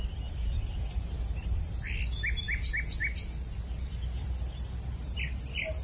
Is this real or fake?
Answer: real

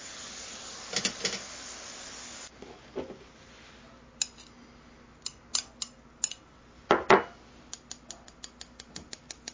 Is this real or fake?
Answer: real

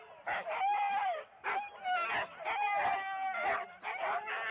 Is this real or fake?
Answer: real